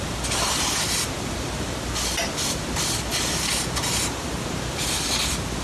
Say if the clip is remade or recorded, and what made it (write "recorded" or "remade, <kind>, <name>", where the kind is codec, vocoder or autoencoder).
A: recorded